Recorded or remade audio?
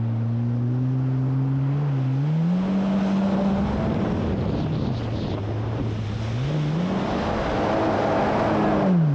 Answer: recorded